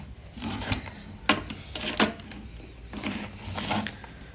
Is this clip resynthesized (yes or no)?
no